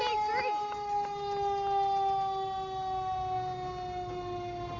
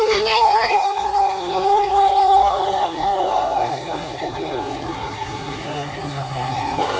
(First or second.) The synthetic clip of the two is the second